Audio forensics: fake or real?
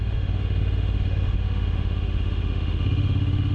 fake